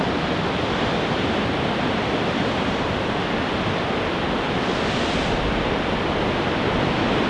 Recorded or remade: recorded